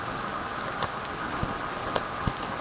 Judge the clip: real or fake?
real